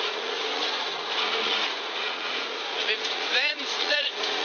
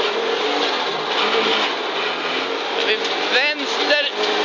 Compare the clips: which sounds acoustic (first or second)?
second